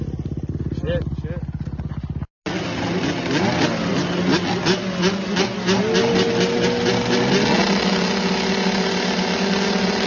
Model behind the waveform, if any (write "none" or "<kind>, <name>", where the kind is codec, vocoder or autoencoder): none